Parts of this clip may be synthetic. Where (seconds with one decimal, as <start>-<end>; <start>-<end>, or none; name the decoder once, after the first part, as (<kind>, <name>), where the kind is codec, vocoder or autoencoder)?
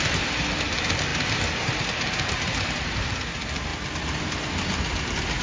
none